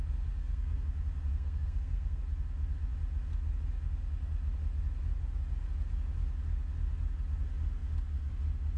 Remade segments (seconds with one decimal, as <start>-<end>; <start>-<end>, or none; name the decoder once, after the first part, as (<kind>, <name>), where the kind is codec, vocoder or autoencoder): 0.4-0.9 (codec, SNAC); 1.3-2.2